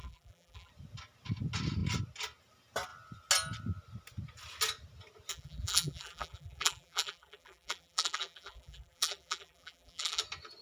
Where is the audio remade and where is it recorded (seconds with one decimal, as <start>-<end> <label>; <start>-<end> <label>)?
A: 0.0-0.7 remade; 0.7-5.3 recorded; 5.3-10.2 remade; 10.2-10.6 recorded